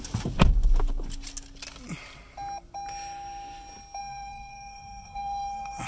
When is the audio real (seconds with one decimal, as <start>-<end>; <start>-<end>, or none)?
0.0-4.0